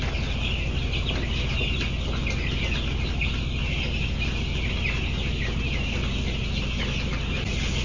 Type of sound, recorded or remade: recorded